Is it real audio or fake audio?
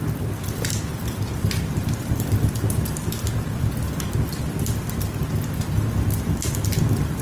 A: real